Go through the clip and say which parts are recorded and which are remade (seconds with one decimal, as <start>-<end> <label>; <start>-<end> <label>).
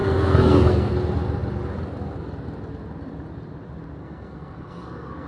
0.0-0.9 remade; 0.9-4.0 recorded; 4.0-5.3 remade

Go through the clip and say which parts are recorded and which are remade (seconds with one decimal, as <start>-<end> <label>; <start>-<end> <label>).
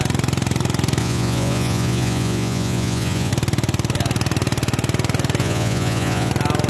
0.0-1.0 recorded; 1.0-3.3 remade; 3.3-5.4 recorded; 5.4-6.3 remade; 6.3-6.7 recorded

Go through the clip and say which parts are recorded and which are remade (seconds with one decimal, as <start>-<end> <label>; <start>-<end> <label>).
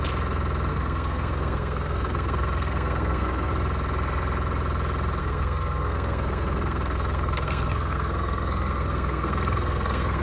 0.0-0.7 recorded; 0.7-3.5 remade; 3.5-5.2 recorded; 5.2-10.2 remade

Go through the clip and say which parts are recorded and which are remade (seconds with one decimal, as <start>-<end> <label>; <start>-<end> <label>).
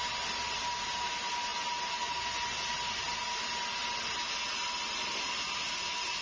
0.0-6.2 recorded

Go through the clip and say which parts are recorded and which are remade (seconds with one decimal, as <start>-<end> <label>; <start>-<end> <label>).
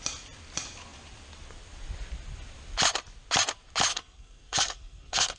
0.0-3.9 recorded; 3.9-5.4 remade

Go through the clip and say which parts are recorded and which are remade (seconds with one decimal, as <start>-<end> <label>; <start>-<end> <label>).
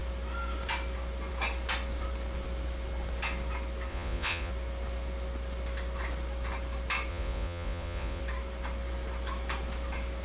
0.0-3.9 recorded; 3.9-4.5 remade; 4.5-7.1 recorded; 7.1-8.2 remade; 8.2-10.2 recorded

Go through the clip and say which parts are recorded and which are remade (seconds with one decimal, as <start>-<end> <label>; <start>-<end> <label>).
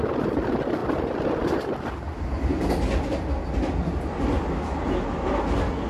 0.0-5.9 recorded